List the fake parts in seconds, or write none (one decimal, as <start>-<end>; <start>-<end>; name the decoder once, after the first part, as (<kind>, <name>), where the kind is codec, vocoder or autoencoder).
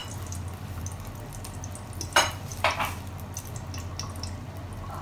none